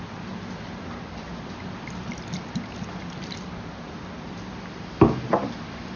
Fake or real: real